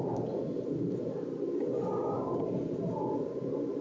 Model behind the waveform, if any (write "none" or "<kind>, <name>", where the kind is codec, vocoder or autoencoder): vocoder, BigVGAN v2